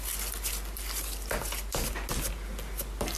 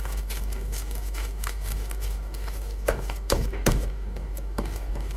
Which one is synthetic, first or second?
second